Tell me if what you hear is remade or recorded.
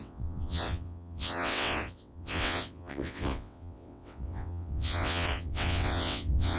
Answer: remade